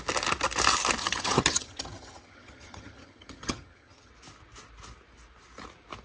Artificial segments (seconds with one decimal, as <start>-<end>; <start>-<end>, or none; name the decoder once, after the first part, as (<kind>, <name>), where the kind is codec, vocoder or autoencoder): 1.0-4.1 (vocoder, HiFi-GAN)